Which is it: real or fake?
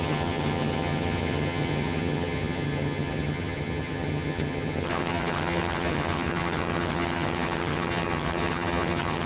fake